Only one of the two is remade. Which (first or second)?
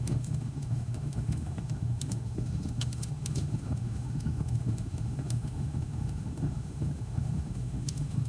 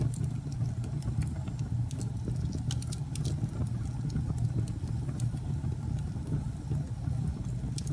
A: first